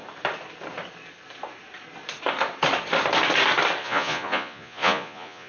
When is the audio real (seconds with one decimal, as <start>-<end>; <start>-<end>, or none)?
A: 0.0-3.8